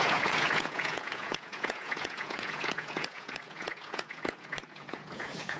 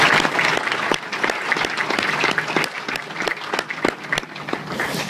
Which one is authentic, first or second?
second